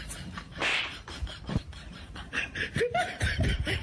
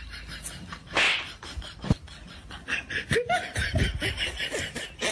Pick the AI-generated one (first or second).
first